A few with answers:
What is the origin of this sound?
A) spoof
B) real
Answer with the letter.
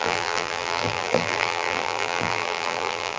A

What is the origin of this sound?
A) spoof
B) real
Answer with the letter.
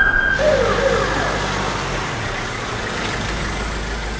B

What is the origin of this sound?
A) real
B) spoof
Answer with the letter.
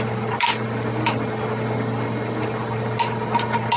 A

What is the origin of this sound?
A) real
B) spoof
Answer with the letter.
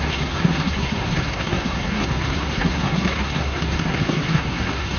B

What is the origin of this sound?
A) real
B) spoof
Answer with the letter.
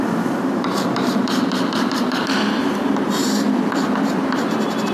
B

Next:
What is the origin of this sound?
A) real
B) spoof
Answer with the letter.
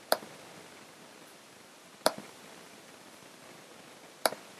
B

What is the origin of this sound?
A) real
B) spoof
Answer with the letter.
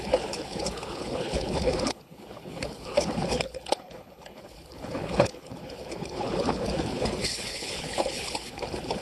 B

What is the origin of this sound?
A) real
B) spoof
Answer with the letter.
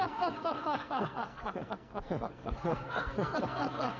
B